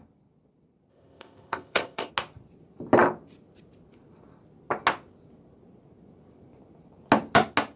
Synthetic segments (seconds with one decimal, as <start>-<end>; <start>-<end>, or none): 0.9-2.1